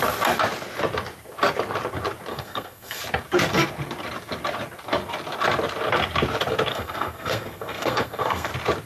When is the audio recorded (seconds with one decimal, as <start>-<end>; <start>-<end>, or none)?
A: 0.0-2.3; 3.0-6.7; 8.5-8.9